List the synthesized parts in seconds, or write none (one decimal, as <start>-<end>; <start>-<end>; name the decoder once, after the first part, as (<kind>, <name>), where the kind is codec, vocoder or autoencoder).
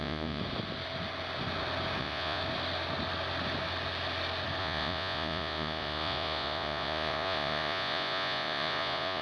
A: 0.0-0.4 (vocoder, Vocos); 2.0-2.4; 4.6-9.2